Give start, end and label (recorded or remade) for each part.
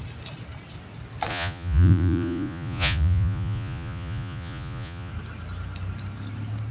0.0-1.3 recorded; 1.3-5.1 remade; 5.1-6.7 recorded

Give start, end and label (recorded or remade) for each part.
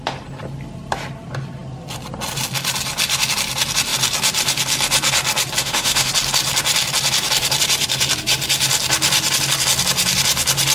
0.0-5.6 recorded; 5.6-6.1 remade; 6.1-10.7 recorded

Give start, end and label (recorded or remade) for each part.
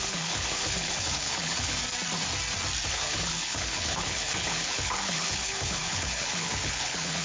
0.0-1.8 remade; 1.8-2.9 recorded; 2.9-7.2 remade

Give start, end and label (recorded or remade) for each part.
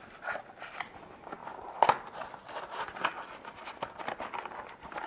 0.0-5.1 recorded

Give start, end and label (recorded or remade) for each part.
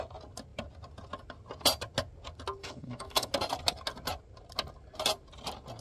0.0-2.6 recorded; 2.6-3.3 remade; 3.3-5.8 recorded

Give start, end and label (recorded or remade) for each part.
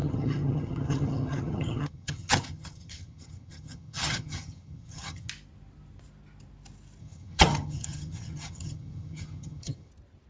0.0-5.3 remade; 5.3-7.0 recorded; 7.0-9.9 remade; 9.9-10.3 recorded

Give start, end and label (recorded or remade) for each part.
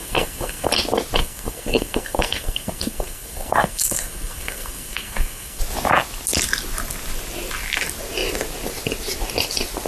0.0-0.7 remade; 0.7-1.2 recorded; 1.2-5.6 remade; 5.6-9.9 recorded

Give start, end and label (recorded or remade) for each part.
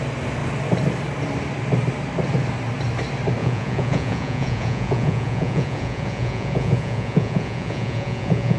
0.0-3.4 recorded; 3.4-8.6 remade